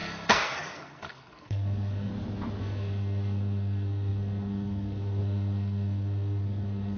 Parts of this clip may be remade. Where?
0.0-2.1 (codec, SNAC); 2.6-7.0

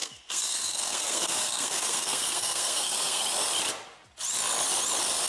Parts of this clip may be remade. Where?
0.0-3.2 (codec, SNAC)

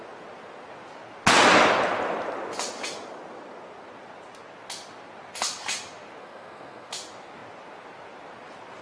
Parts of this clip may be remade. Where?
6.2-6.9 (codec, SNAC)